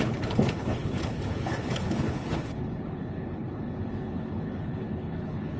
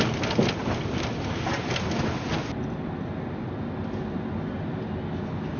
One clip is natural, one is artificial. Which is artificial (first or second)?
first